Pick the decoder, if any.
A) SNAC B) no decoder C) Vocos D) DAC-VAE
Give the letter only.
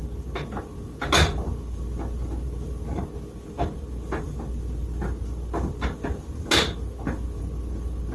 B